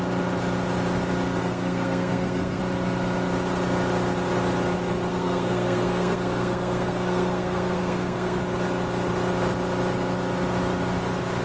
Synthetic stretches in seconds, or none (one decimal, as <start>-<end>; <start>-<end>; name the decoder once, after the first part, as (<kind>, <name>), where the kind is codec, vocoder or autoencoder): 1.4-2.6 (codec, SNAC); 5.1-8.4